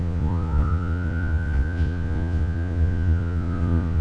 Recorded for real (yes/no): no